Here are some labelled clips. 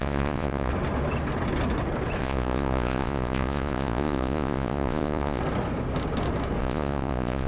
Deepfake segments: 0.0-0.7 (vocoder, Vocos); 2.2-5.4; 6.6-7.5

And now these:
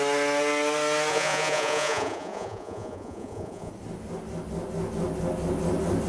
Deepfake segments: 1.1-3.7 (vocoder, Vocos)

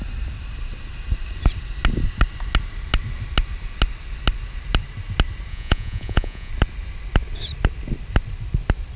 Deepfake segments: 5.5-6.5 (vocoder, Vocos)

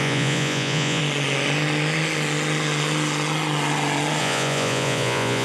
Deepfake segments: 0.0-1.0 (vocoder, Vocos); 4.2-5.4

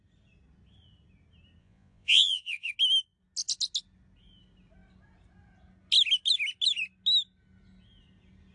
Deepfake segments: 1.6-2.7 (vocoder, Vocos)

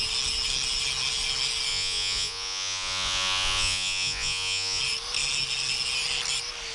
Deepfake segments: 1.7-4.8 (vocoder, Vocos)

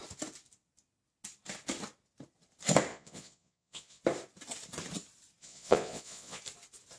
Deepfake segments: 2.9-4.0 (vocoder, Vocos); 5.4-6.4

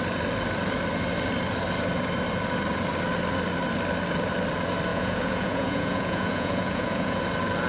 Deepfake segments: 4.9-7.2 (vocoder, Vocos)